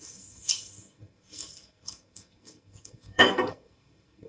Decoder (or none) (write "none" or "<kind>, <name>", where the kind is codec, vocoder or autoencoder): codec, SNAC